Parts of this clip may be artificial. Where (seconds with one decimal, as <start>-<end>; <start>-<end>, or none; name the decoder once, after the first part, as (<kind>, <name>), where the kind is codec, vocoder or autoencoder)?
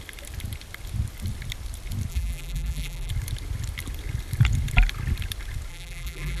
2.1-3.1 (vocoder, BigVGAN v2); 5.7-6.4